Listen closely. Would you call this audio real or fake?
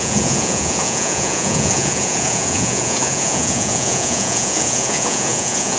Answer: fake